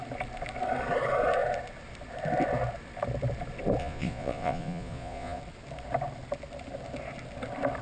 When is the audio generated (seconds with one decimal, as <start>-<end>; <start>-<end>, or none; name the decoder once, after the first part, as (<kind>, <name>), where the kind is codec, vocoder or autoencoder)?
3.8-5.4 (vocoder, Vocos)